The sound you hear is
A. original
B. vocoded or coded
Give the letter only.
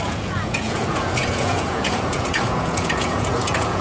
B